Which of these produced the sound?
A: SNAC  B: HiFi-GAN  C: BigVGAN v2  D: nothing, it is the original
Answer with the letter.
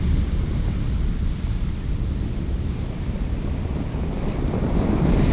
C